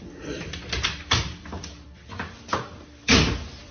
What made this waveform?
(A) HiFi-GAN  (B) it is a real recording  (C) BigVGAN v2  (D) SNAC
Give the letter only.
C